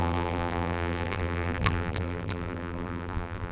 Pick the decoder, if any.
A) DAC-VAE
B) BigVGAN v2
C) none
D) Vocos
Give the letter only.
B